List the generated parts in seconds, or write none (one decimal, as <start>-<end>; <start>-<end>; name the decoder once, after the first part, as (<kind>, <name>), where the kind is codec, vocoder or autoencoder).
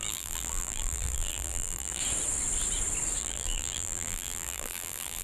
0.0-2.0 (vocoder, BigVGAN v2); 3.2-5.2